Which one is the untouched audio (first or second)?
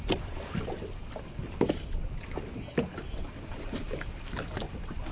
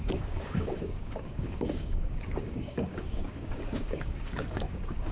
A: first